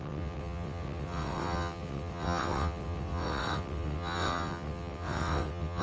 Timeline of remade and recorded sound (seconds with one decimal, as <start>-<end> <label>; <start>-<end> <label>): 0.0-5.8 remade